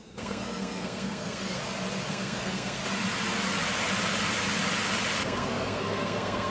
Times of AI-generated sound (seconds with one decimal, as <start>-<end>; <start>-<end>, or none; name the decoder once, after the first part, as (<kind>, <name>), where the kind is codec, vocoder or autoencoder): 0.0-1.6 (codec, SNAC); 2.1-2.8; 5.2-6.5